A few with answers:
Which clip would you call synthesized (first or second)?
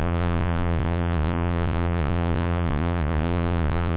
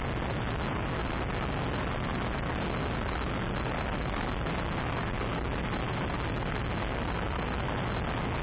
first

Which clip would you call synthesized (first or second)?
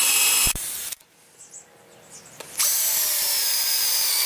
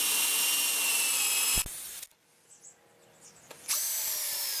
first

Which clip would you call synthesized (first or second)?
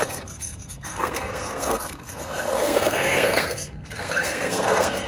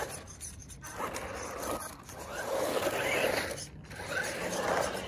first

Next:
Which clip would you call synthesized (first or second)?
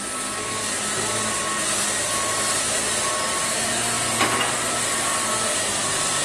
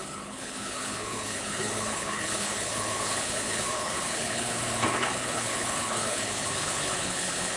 second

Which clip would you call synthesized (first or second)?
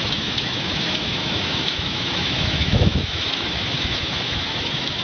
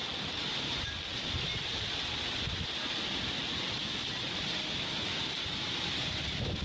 first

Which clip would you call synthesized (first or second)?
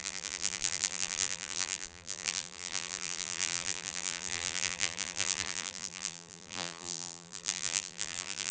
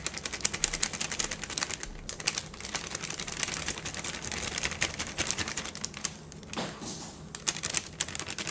first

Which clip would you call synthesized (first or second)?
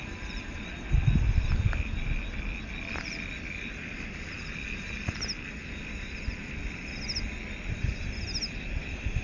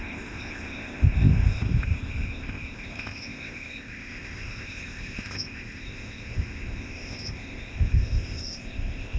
second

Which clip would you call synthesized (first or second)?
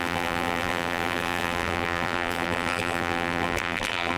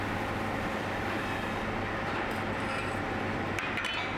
first